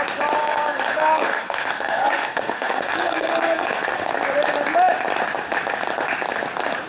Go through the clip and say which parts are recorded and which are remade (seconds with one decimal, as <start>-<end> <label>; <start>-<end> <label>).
0.0-0.4 recorded; 0.4-4.1 remade; 4.1-6.9 recorded